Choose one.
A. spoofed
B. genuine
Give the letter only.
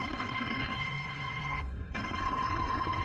A